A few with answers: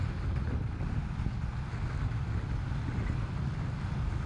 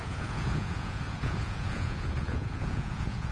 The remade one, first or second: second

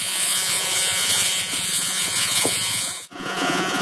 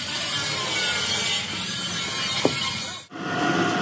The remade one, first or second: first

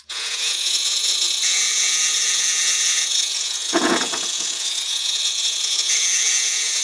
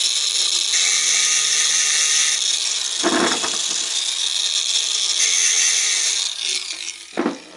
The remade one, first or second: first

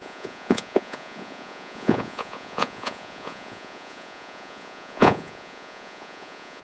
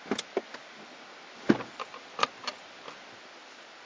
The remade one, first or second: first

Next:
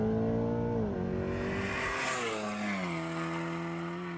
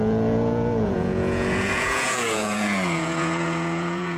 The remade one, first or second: second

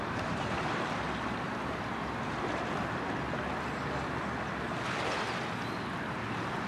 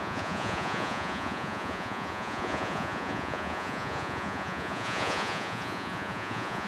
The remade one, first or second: second